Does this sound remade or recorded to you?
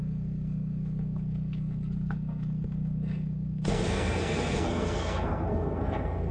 remade